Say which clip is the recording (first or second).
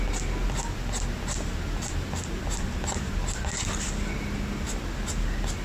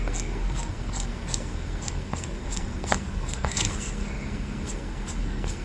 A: first